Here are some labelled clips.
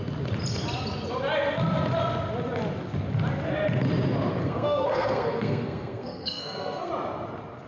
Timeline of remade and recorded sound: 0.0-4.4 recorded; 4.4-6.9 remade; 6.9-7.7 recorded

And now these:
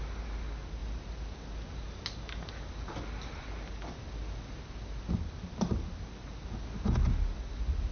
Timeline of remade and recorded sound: 0.0-7.9 recorded

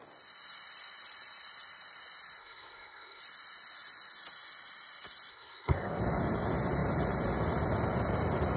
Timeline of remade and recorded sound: 0.0-2.4 recorded; 2.4-3.2 remade; 3.2-5.3 recorded; 5.3-6.0 remade; 6.0-8.6 recorded

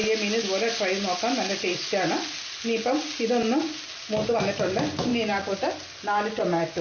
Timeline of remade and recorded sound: 0.0-6.8 recorded

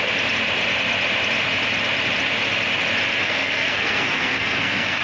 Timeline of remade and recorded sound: 0.0-3.2 recorded; 3.2-5.0 remade

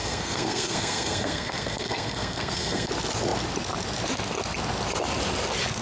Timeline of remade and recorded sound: 0.0-2.9 remade; 2.9-5.8 recorded